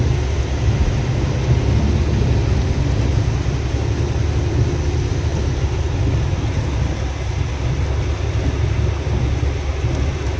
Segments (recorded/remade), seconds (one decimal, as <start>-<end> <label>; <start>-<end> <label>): 0.0-10.4 recorded